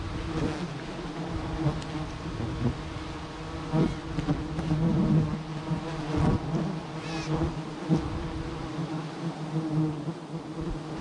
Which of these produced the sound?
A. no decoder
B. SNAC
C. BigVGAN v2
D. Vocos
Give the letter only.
A